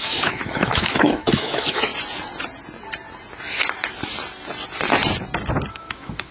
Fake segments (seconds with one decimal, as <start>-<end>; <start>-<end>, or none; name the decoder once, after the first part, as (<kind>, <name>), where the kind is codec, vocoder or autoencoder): 0.0-1.9 (autoencoder, DAC-VAE); 5.7-6.3